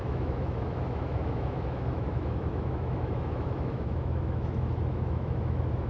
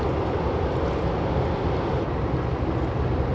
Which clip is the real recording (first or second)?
second